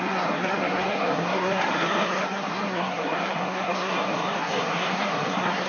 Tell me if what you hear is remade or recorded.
remade